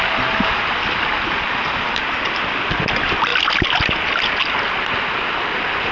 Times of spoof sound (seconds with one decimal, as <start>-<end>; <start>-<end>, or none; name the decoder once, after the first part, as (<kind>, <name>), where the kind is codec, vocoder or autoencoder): none